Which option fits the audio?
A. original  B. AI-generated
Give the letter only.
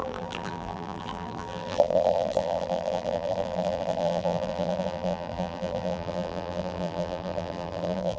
B